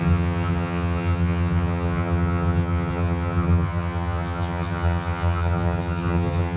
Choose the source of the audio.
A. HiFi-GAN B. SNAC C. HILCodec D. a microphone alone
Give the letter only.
A